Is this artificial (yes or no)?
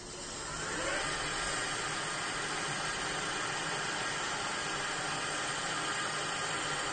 no